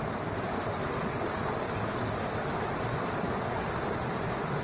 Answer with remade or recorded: recorded